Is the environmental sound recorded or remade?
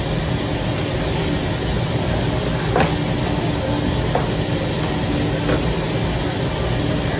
recorded